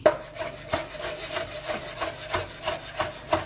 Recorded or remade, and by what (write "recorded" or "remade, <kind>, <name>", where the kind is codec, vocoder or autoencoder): recorded